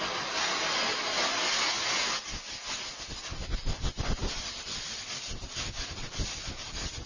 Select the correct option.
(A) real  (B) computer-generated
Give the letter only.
A